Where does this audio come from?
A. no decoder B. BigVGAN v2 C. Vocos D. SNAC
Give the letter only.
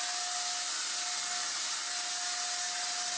A